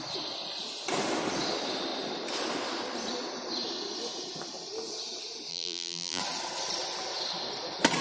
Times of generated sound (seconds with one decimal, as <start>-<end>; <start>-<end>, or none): 5.5-6.2